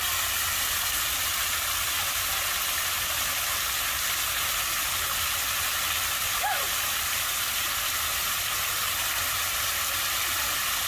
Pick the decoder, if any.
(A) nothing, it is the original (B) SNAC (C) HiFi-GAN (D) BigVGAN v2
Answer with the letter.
A